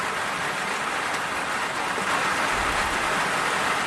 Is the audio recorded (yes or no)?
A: yes